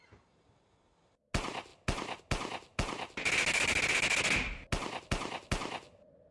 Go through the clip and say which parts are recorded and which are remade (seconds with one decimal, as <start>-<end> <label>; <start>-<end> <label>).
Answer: 0.0-6.3 recorded